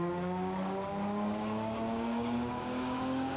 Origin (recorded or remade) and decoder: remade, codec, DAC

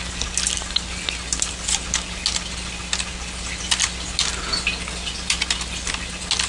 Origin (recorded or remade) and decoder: recorded